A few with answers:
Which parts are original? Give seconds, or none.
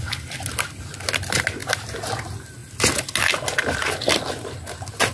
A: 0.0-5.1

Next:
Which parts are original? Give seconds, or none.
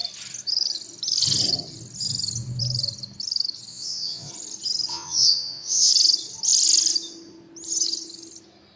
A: 0.0-3.7; 4.3-4.9; 5.9-8.8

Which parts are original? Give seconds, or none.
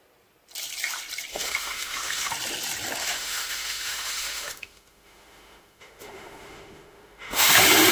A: 0.0-1.3; 2.3-3.0; 7.5-7.9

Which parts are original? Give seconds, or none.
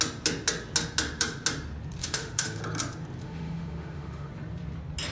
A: 0.0-2.0; 2.6-3.2; 4.3-5.1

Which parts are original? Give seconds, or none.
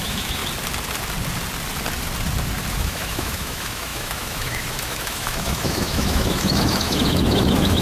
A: 0.4-2.7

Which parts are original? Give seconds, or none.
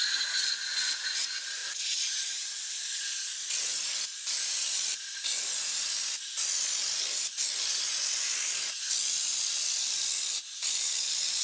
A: 0.0-11.4